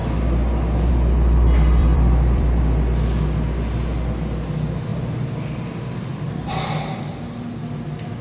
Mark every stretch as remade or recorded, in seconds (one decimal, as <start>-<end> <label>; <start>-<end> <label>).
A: 0.0-1.8 recorded; 1.8-2.6 remade; 2.6-4.9 recorded; 4.9-6.5 remade; 6.5-8.2 recorded